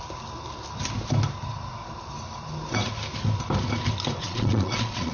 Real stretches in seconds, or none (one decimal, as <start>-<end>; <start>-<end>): 0.0-4.2